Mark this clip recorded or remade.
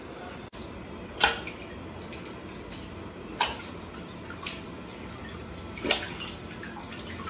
recorded